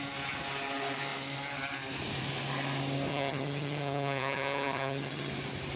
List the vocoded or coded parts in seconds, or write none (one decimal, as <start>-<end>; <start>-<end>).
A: 3.1-5.3